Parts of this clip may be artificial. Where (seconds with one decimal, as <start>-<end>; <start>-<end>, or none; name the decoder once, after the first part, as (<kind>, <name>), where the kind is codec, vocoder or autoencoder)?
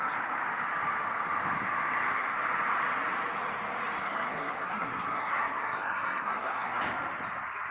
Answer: 4.0-6.8 (codec, SNAC)